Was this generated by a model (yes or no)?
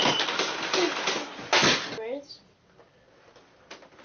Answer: no